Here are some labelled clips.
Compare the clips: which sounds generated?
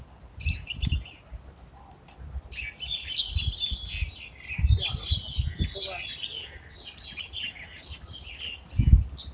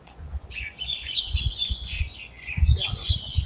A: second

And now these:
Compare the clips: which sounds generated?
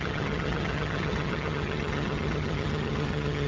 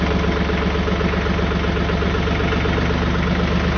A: first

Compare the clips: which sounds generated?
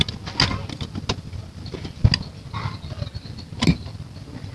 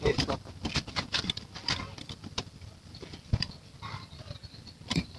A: second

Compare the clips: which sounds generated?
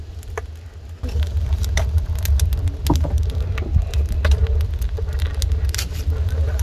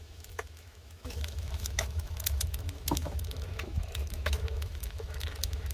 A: second